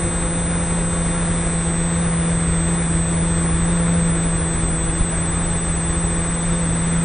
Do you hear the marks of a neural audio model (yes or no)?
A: no